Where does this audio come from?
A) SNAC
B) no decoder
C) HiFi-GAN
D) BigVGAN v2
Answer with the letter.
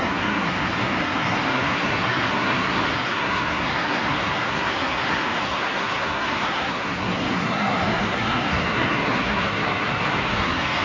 A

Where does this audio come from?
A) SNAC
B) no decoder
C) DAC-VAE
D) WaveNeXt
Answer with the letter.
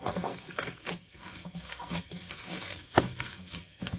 A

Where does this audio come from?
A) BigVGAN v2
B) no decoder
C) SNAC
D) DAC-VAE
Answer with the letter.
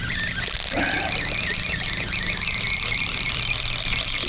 B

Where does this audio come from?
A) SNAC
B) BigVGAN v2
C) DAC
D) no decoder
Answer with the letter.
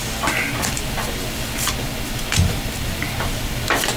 D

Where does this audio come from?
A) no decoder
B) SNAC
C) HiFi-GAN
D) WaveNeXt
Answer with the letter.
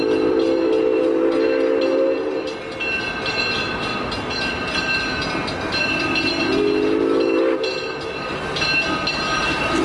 A